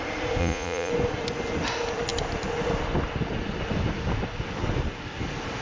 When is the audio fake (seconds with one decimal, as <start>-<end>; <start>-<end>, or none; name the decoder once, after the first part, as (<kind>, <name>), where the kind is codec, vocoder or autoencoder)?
0.4-0.9 (vocoder, Vocos)